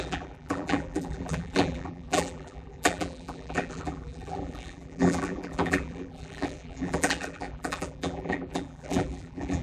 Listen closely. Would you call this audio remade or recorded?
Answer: remade